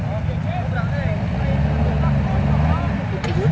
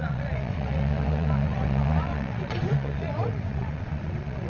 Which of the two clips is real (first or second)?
first